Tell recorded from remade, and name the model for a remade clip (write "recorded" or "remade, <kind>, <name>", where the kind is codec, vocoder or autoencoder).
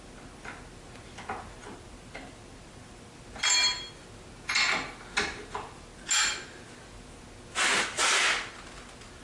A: recorded